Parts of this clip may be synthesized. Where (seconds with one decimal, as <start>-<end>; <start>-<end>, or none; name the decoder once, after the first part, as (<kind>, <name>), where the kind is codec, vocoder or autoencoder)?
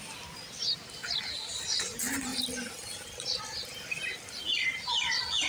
none